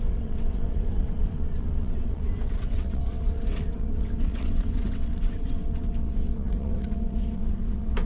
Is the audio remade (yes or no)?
yes